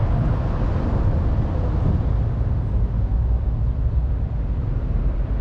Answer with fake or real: real